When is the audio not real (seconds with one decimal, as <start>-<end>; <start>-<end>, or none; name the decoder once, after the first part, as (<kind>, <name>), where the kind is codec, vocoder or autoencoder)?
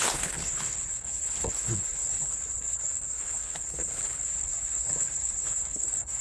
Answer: 0.0-6.2 (codec, HILCodec)